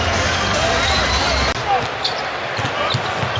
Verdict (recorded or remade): recorded